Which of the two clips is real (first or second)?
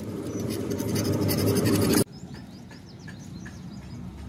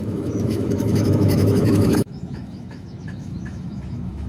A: first